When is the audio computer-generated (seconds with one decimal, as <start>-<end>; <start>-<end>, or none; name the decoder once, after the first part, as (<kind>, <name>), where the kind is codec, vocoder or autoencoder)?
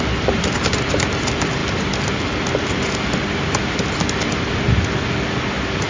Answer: none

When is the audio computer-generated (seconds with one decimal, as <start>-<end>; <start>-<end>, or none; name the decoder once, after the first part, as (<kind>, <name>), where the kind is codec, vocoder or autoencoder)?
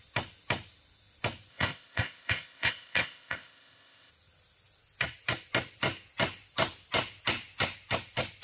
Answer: 1.5-4.1 (codec, ZipCodec)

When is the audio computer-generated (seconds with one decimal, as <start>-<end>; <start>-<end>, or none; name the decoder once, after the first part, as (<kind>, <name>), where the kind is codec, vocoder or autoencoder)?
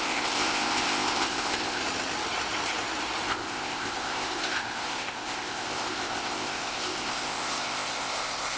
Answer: 0.0-1.8 (codec, ZipCodec); 3.3-8.6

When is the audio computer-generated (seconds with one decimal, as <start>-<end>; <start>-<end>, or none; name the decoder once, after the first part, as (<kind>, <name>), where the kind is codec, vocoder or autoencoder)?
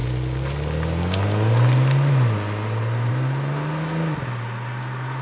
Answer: none